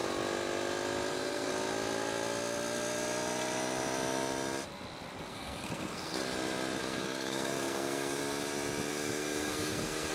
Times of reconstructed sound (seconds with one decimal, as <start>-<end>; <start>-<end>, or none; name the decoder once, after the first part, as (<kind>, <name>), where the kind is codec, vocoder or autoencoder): 1.1-1.5 (codec, SNAC); 5.2-6.2; 6.8-8.2; 8.9-10.1